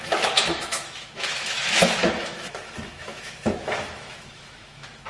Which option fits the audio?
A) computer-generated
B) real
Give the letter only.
A